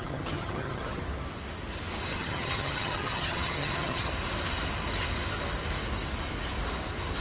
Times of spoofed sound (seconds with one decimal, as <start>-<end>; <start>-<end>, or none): 0.0-1.0; 2.1-4.1